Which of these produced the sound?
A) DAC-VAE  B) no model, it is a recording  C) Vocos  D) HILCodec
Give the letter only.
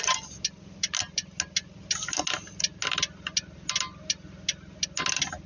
B